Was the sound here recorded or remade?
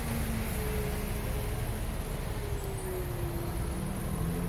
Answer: recorded